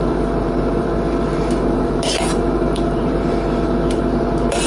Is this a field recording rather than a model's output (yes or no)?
no